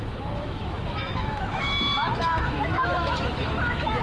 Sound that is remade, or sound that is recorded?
remade